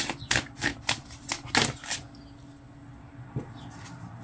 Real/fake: real